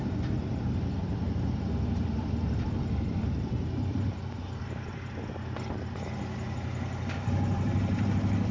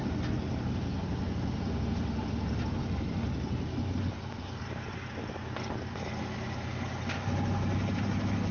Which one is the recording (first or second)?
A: second